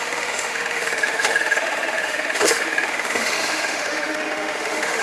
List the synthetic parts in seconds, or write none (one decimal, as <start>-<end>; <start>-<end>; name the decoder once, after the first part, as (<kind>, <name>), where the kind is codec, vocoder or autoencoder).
0.0-5.0 (autoencoder, DAC-VAE)